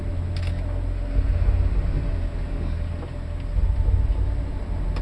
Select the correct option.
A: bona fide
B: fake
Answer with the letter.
A